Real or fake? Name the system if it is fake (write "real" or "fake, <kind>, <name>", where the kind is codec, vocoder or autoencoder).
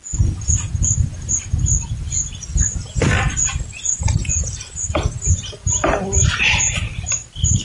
real